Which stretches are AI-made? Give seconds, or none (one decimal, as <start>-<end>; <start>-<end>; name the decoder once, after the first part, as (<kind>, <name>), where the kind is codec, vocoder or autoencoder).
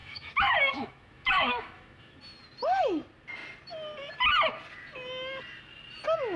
0.0-2.2 (autoencoder, DAC-VAE)